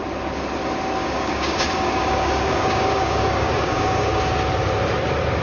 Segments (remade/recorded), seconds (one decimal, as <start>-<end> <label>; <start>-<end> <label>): 0.0-1.0 recorded; 1.0-4.2 remade; 4.2-5.4 recorded